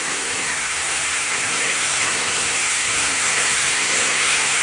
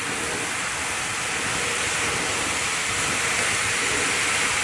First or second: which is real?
second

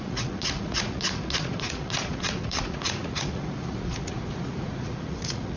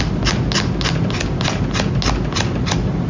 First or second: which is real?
second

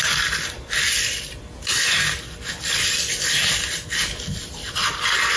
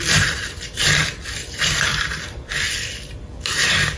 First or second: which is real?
first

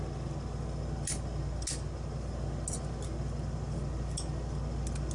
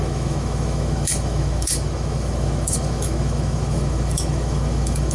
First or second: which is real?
first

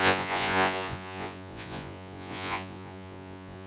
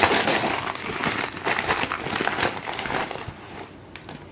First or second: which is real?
second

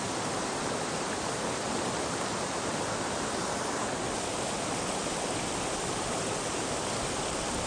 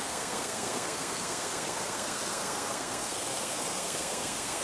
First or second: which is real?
first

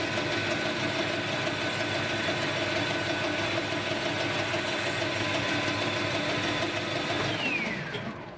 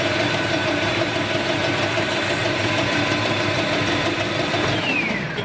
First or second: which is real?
first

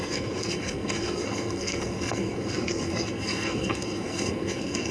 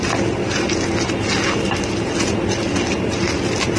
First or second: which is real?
second